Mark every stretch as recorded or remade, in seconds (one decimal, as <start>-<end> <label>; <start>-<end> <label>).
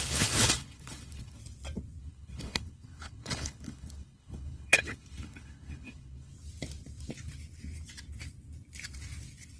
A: 0.0-1.4 remade; 1.4-2.0 recorded; 2.0-6.3 remade; 6.3-9.6 recorded